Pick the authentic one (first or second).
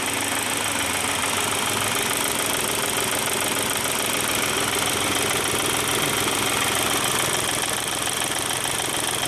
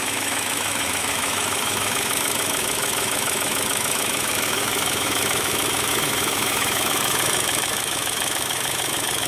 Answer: first